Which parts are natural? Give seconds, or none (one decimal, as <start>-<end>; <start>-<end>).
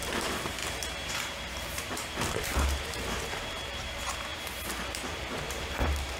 0.6-1.1; 4.3-4.8